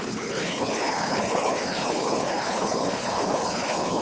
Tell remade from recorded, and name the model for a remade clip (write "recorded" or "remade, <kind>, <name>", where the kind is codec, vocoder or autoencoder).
remade, codec, HILCodec